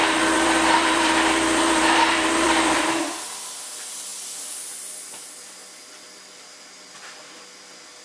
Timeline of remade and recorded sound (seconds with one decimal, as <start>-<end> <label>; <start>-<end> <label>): 0.0-3.0 remade; 3.0-8.0 recorded